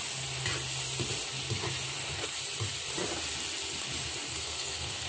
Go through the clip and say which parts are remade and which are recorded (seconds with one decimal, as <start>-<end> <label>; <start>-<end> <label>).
0.0-4.3 recorded; 4.3-5.1 remade